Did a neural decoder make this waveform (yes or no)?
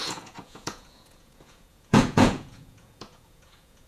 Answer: yes